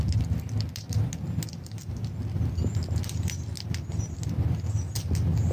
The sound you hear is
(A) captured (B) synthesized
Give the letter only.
A